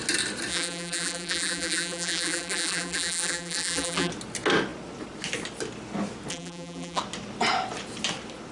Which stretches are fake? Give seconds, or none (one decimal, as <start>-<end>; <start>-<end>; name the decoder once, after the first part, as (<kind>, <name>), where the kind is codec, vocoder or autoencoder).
0.5-4.1 (vocoder, BigVGAN v2); 6.3-7.0